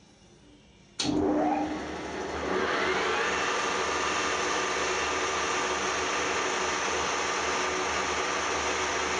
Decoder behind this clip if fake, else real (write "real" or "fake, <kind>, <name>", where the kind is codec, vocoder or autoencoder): real